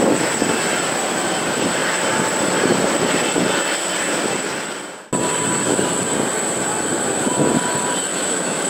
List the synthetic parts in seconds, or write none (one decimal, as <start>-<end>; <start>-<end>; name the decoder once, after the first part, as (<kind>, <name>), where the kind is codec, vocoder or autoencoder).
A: 8.1-8.7 (autoencoder, DAC-VAE)